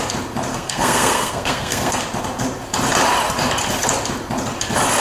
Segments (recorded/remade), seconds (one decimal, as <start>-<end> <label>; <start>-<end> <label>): 0.0-0.5 recorded; 0.5-2.0 remade; 2.0-5.0 recorded

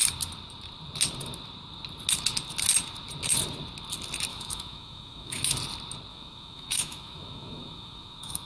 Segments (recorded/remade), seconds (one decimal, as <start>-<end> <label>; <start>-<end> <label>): 0.0-4.3 recorded; 4.3-5.5 remade; 5.5-6.1 recorded; 6.1-8.5 remade

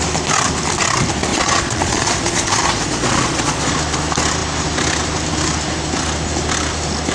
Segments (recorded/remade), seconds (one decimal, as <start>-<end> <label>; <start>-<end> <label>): 0.0-1.3 recorded; 1.3-3.7 remade; 3.7-7.1 recorded

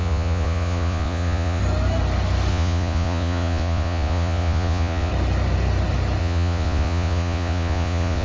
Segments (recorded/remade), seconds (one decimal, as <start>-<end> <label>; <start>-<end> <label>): 0.0-1.6 remade; 1.6-2.5 recorded; 2.5-5.1 remade; 5.1-6.2 recorded; 6.2-8.2 remade

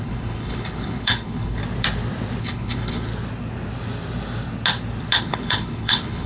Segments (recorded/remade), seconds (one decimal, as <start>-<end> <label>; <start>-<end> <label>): 0.0-1.6 remade; 1.6-2.4 recorded; 2.4-3.1 remade; 3.1-5.2 recorded; 5.2-6.3 remade

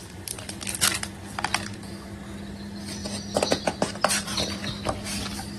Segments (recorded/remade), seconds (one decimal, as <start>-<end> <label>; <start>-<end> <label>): 0.0-5.6 recorded